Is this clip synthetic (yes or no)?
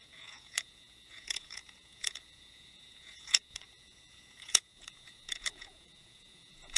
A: yes